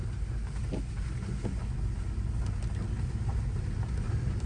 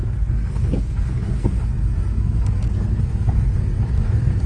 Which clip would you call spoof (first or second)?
second